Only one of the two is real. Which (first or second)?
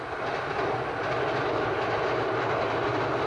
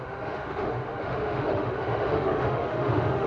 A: first